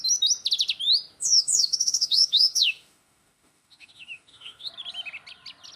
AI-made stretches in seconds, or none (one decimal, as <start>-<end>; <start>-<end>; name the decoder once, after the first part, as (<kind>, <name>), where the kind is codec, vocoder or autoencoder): 1.2-4.7 (autoencoder, DAC-VAE)